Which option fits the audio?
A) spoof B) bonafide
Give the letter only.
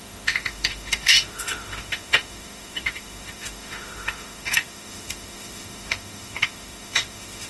A